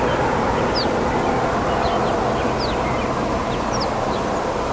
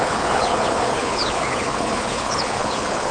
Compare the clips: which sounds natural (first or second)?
first